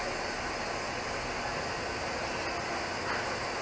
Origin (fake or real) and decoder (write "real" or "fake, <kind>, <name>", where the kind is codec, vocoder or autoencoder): real